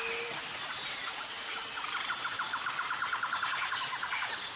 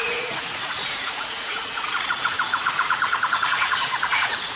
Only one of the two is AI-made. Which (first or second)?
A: second